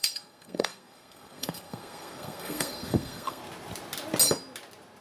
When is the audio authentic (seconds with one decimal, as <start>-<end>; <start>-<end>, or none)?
3.4-5.0